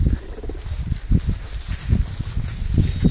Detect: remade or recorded recorded